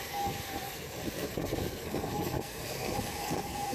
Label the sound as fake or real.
fake